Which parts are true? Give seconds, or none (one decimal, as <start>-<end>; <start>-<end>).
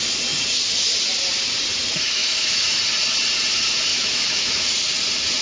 0.0-2.2; 2.8-3.9; 4.6-5.4